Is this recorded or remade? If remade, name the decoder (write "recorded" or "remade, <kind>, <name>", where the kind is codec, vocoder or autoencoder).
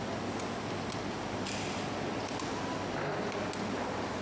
recorded